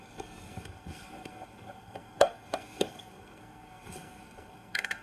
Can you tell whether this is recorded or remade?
remade